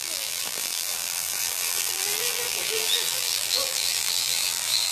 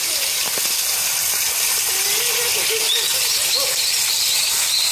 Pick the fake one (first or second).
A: first